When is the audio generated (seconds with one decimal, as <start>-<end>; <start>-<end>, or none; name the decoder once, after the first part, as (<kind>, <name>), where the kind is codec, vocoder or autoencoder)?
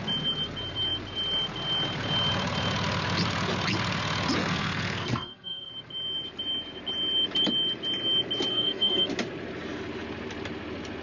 4.4-5.7 (codec, SNAC); 8.5-9.1